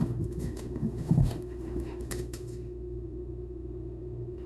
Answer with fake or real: fake